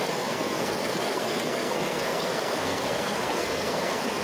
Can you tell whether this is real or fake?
fake